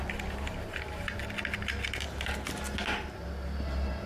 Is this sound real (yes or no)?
yes